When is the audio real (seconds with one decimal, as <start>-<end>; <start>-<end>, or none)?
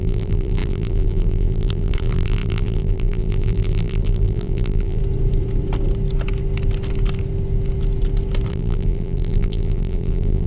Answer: 5.0-8.5